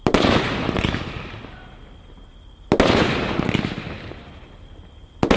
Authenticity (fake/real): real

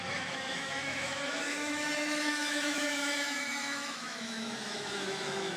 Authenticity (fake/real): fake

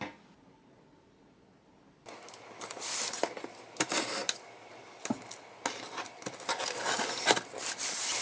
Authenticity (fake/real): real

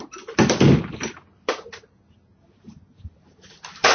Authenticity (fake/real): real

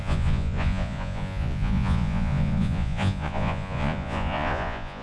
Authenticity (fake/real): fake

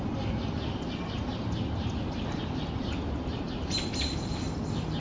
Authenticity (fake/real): real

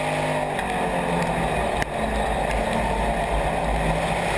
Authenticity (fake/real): real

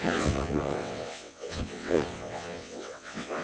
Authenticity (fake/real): fake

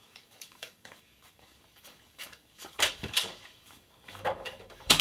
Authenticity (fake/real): fake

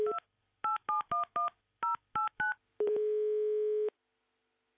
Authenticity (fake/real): real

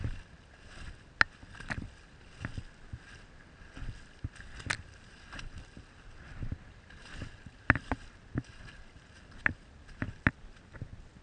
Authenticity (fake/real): real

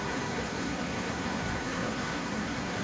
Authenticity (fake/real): fake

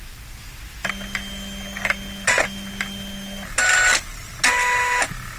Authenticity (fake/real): real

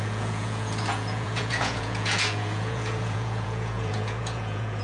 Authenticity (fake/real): fake